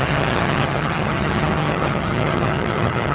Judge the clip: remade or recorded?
remade